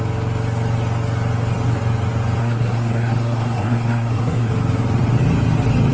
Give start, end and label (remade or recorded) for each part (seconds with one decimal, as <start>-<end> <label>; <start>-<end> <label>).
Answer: 0.0-2.4 recorded; 2.4-4.5 remade; 4.5-5.9 recorded